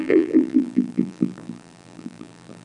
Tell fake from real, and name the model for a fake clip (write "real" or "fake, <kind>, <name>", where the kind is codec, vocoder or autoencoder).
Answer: fake, vocoder, BigVGAN v2